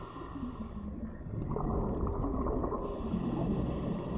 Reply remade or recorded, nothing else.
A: recorded